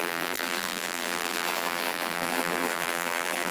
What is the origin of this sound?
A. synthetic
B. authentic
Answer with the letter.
A